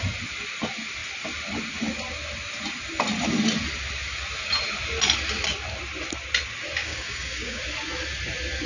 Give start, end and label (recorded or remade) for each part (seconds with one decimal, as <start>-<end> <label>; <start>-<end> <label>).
0.0-6.8 recorded; 6.8-7.6 remade; 7.6-8.7 recorded